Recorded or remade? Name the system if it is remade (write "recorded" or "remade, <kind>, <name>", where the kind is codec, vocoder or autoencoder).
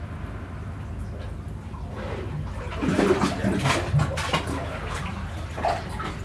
recorded